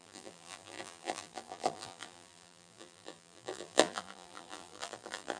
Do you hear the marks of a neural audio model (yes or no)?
yes